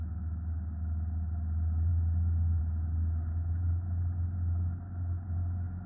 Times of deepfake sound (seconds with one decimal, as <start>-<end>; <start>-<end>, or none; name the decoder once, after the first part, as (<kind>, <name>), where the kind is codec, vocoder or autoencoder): none